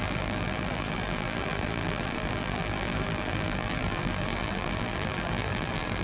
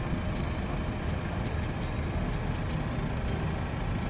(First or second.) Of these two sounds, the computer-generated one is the first